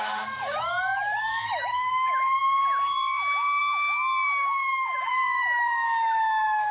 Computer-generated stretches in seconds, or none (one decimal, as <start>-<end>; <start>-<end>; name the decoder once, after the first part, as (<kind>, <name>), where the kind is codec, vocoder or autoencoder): 0.0-6.7 (autoencoder, DAC-VAE)